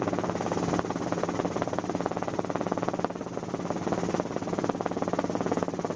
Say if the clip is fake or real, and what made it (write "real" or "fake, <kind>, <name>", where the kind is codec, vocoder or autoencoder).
real